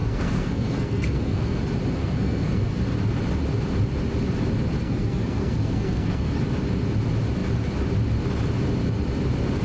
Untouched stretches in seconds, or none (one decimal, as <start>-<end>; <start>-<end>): 1.6-2.0; 2.8-4.8; 6.3-9.6